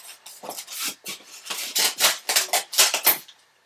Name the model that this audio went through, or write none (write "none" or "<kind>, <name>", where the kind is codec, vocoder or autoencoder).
none